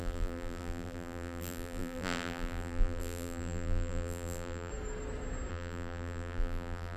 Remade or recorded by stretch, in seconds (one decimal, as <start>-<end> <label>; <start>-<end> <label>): 0.0-4.7 remade; 4.7-5.5 recorded; 5.5-7.0 remade